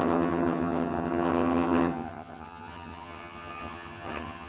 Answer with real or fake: fake